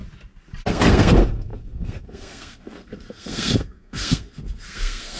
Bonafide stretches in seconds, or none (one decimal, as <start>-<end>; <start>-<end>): 0.0-0.7